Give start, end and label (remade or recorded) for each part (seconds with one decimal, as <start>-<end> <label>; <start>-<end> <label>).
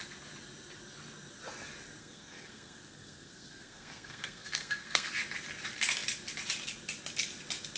0.0-2.0 recorded; 2.0-5.1 remade; 5.1-7.8 recorded